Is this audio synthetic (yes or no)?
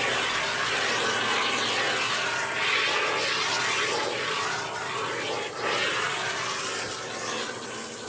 no